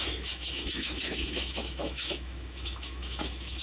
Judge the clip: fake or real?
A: fake